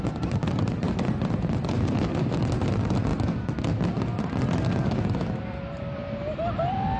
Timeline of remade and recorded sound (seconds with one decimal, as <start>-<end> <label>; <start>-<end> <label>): 0.0-3.1 remade; 3.1-5.4 recorded; 5.4-7.0 remade